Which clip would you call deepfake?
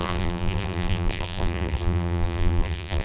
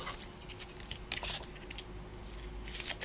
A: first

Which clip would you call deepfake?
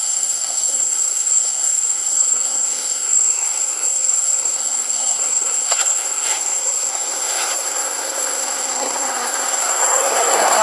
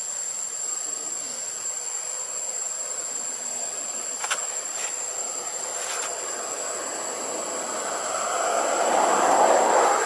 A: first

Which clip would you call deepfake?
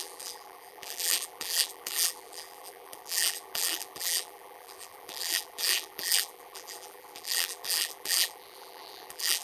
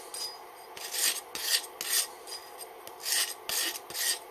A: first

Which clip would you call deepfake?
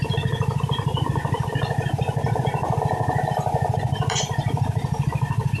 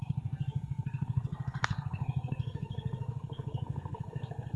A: second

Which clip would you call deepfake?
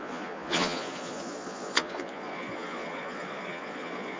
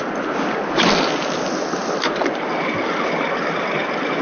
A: first